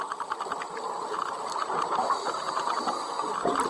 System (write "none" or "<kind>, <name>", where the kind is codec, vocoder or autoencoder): none